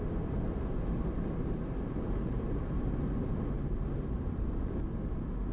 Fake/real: real